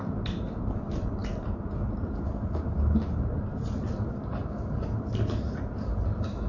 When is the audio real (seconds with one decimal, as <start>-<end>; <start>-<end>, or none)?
0.0-6.5